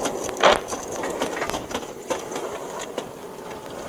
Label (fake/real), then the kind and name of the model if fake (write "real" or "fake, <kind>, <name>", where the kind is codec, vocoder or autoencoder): real